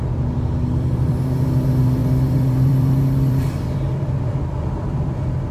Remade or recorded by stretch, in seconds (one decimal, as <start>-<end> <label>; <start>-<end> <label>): 0.0-5.5 remade